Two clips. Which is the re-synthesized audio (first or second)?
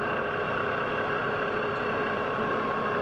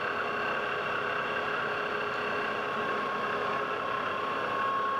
first